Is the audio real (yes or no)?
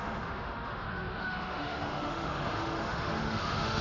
no